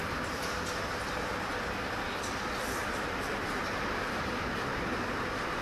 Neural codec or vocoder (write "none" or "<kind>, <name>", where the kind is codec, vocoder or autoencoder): none